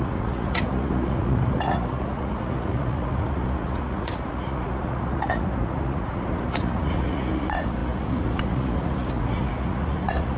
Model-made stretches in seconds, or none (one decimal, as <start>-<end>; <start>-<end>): 0.0-10.4